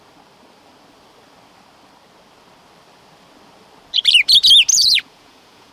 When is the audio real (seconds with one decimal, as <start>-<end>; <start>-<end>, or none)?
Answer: 0.0-4.7